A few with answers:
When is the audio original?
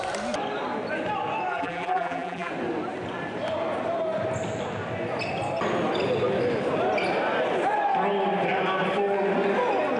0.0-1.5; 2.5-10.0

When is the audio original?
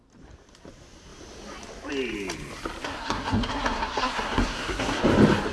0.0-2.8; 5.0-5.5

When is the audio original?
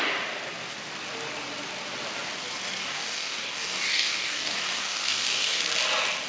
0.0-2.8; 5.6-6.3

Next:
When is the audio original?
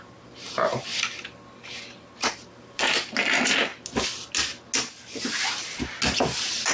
0.9-2.0; 3.7-6.7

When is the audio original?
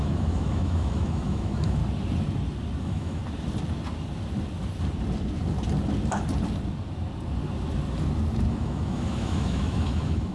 1.8-2.8; 3.2-8.5